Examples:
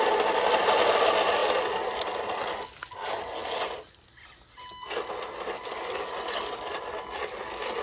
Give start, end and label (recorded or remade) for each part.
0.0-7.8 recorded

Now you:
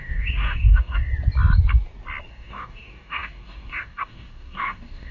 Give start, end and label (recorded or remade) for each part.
0.0-1.1 remade; 1.1-2.3 recorded; 2.3-5.1 remade

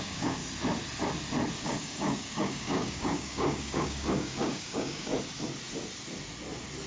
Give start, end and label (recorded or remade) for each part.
0.0-0.4 remade; 0.4-1.6 recorded; 1.6-5.1 remade; 5.1-6.9 recorded

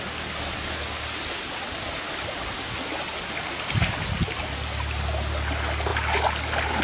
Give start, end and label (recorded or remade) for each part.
0.0-6.8 recorded

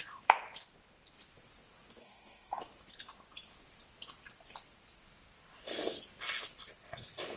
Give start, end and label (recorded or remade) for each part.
0.0-2.0 recorded; 2.0-2.6 remade; 2.6-7.4 recorded